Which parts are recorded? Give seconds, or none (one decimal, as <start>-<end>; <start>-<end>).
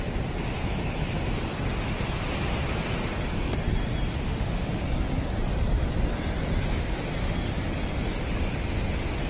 0.0-4.2; 4.8-9.3